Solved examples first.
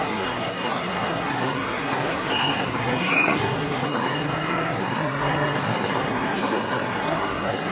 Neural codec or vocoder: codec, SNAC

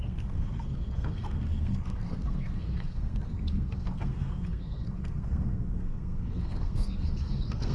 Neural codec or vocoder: codec, SNAC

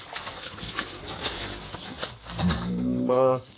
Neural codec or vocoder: codec, SNAC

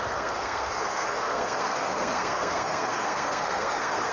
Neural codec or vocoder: codec, SNAC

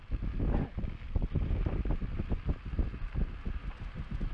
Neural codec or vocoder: none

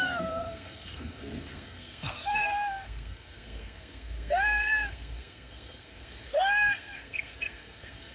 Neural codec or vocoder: codec, SNAC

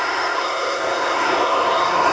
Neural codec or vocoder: codec, SNAC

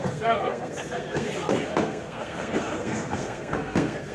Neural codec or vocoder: codec, SNAC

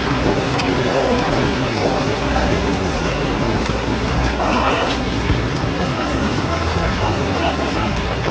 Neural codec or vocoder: codec, SNAC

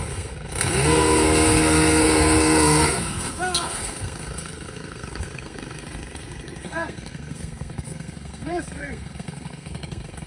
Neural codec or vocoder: codec, SNAC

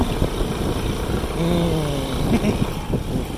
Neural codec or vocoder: none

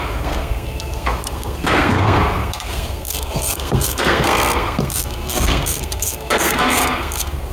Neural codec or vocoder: codec, SNAC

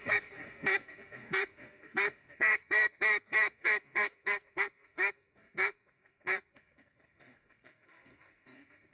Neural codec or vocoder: codec, SNAC